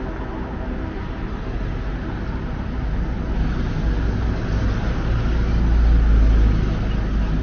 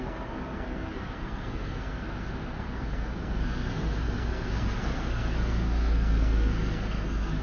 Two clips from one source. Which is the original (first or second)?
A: first